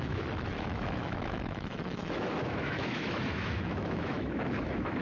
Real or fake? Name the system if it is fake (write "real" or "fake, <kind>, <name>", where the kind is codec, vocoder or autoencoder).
fake, autoencoder, DAC-VAE